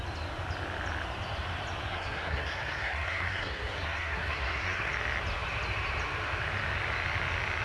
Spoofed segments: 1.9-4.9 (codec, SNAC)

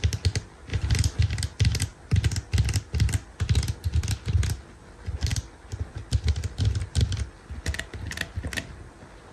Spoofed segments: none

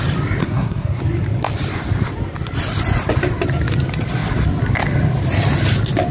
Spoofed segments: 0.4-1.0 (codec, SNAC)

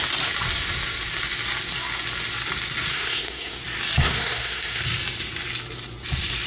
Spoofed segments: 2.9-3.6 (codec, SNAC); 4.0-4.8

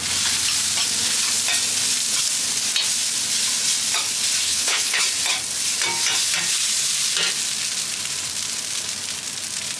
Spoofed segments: 4.4-5.0 (codec, HILCodec)

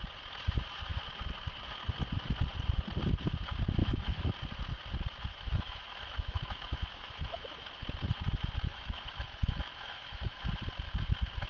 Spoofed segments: 3.8-4.3 (autoencoder, DAC-VAE); 5.3-7.7; 8.7-10.4

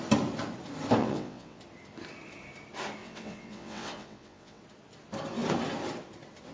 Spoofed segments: 1.0-1.6 (vocoder, WaveNeXt); 3.0-4.6

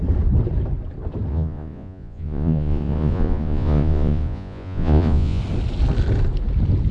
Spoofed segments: 1.3-5.4 (vocoder, Vocos)